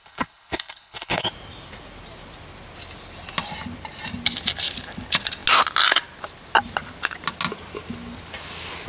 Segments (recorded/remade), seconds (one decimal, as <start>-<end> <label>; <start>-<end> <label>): 0.0-1.3 remade; 1.3-8.9 recorded